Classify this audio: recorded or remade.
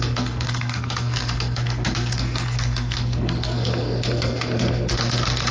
remade